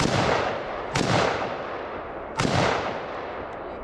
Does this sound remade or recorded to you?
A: remade